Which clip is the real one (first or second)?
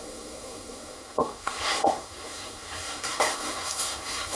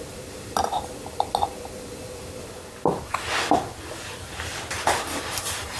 second